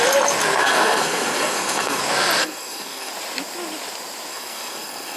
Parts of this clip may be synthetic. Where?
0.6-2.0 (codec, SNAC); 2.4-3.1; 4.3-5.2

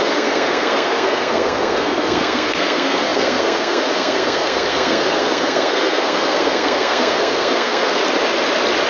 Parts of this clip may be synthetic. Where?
0.0-8.0 (codec, SNAC)